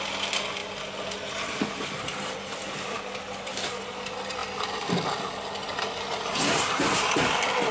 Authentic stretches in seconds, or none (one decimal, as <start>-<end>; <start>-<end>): 0.0-7.7